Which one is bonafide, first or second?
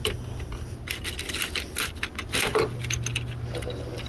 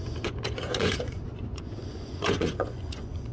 first